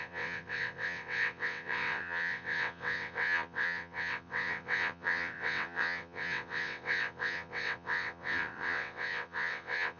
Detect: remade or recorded remade